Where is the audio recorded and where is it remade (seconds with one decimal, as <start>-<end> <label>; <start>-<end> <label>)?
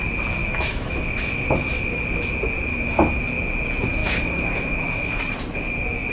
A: 0.0-0.4 recorded; 0.4-2.0 remade; 2.0-2.7 recorded; 2.7-3.2 remade; 3.2-4.0 recorded; 4.0-5.2 remade; 5.2-6.1 recorded